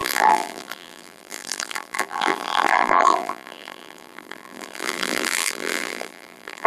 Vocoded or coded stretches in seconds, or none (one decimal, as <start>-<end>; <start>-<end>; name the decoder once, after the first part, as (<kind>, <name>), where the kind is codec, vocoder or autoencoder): 0.0-6.7 (vocoder, BigVGAN v2)